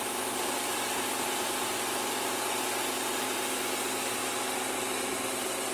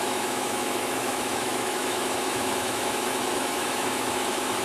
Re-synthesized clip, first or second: second